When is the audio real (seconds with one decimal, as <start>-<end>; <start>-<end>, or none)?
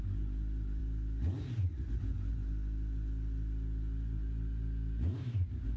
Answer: 0.0-5.8